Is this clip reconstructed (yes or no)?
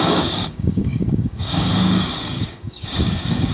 yes